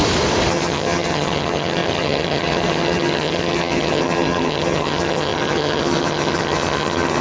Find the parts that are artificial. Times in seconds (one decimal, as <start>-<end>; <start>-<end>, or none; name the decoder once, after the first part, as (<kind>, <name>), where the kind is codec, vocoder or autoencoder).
0.5-7.2 (vocoder, HiFi-GAN)